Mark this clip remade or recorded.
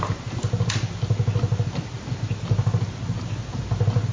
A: recorded